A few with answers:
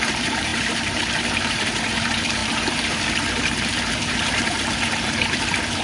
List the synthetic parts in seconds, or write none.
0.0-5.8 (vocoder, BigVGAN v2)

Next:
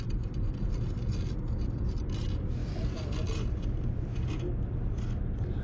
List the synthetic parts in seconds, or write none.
none

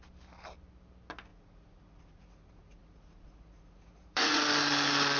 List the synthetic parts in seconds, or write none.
1.3-4.4 (vocoder, Vocos)

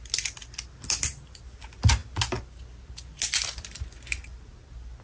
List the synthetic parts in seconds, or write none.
none